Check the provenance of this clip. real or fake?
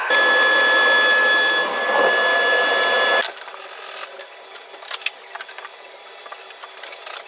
real